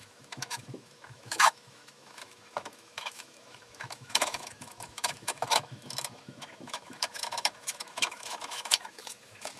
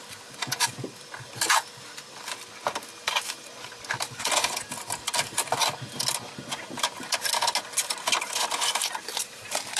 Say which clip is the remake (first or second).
first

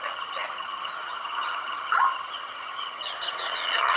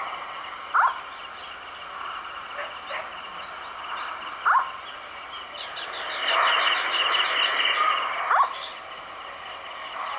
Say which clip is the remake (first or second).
first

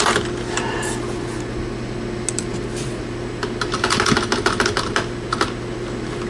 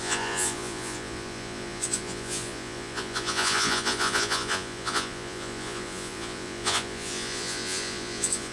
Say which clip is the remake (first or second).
second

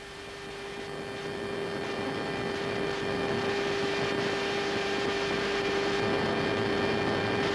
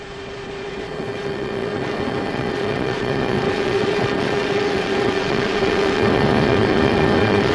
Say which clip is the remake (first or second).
second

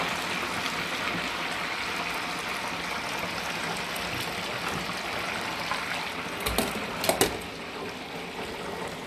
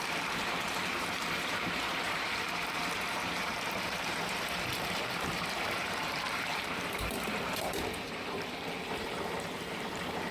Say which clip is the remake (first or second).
second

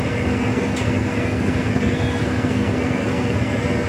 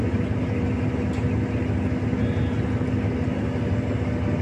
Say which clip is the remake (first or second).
first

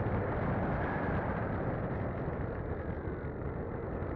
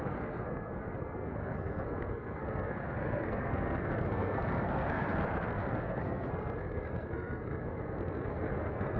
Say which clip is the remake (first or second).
second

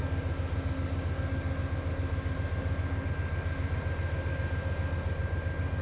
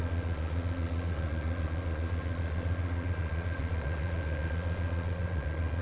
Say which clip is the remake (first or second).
second